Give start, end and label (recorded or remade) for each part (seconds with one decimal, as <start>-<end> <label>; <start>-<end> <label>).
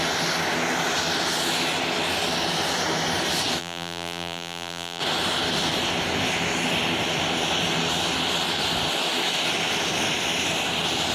0.0-3.6 recorded; 3.6-5.0 remade; 5.0-11.1 recorded